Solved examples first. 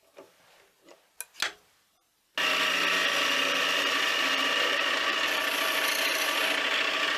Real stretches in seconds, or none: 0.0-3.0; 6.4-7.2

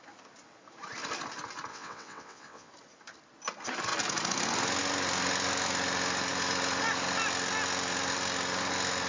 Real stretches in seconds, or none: 0.0-1.7; 2.7-9.1

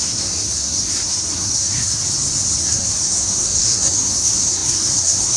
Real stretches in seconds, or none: 2.0-2.6